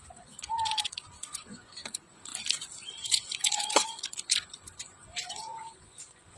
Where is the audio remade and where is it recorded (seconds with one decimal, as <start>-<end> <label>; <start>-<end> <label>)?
0.0-2.3 remade; 2.3-3.0 recorded; 3.0-6.4 remade